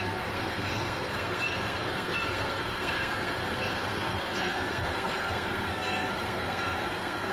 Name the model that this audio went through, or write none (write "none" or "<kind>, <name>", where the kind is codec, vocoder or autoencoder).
codec, SNAC